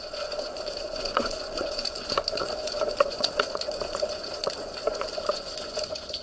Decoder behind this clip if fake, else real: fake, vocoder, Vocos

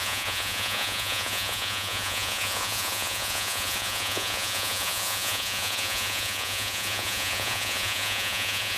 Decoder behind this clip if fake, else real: fake, vocoder, Vocos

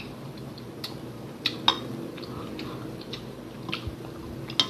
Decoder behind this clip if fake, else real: real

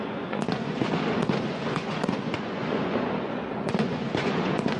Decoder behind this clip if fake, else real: fake, vocoder, Vocos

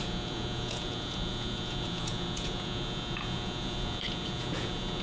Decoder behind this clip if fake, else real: fake, vocoder, Vocos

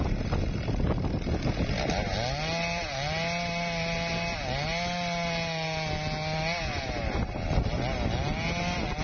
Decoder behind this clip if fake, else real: real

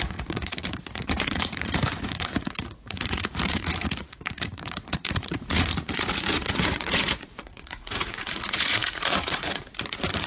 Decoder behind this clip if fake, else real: fake, vocoder, Vocos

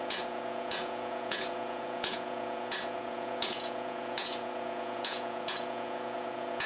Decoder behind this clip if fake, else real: fake, vocoder, Vocos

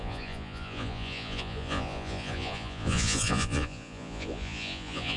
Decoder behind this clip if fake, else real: fake, vocoder, Vocos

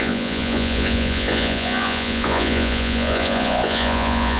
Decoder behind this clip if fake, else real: fake, vocoder, Vocos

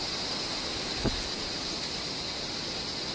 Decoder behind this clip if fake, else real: real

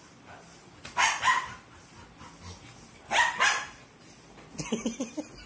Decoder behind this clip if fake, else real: real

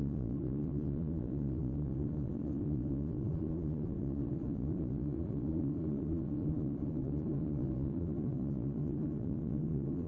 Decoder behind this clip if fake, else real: fake, vocoder, Vocos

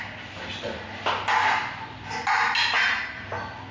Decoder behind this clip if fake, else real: real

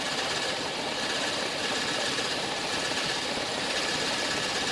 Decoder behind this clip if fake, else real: real